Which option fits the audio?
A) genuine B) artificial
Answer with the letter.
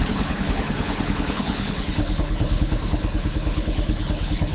B